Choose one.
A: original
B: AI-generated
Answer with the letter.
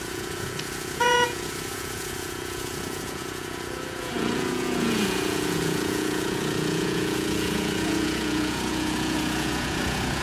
B